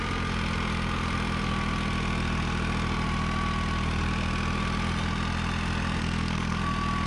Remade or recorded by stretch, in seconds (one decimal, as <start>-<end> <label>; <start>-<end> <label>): 0.0-6.0 recorded; 6.0-6.6 remade; 6.6-7.1 recorded